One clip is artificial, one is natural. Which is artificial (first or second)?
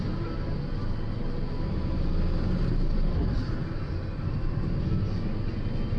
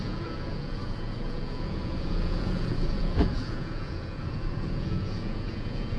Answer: second